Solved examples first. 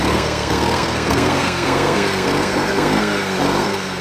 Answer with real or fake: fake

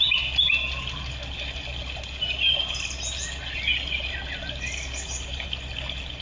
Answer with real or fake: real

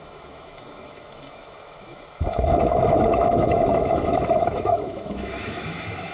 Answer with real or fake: fake